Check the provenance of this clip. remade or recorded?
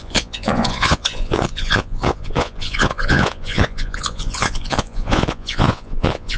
remade